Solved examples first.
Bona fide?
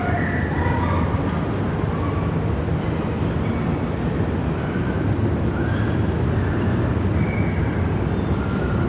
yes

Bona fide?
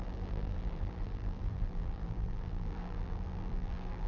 no